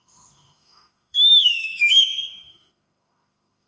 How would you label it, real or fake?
fake